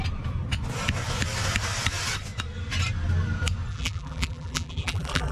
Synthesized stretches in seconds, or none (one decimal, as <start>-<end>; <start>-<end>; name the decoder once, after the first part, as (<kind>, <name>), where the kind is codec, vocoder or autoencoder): 3.7-5.3 (vocoder, BigVGAN v2)